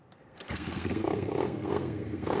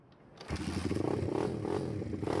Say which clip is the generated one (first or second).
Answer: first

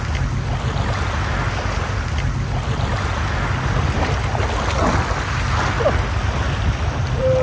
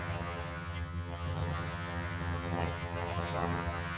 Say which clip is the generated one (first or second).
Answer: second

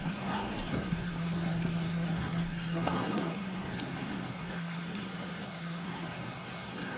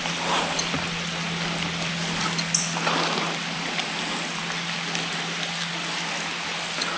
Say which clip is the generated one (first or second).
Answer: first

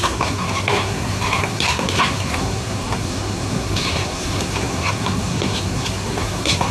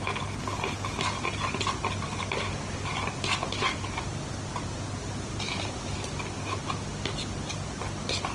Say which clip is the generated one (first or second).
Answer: first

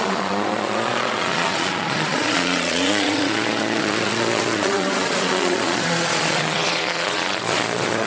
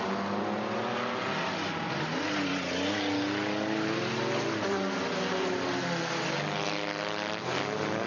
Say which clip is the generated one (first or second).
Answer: first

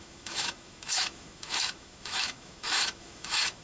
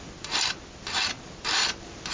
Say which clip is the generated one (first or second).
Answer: first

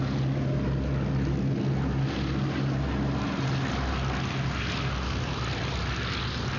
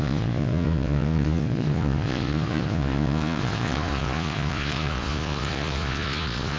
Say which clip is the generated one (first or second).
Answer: second